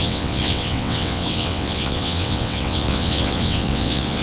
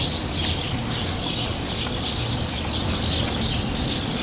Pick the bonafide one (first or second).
second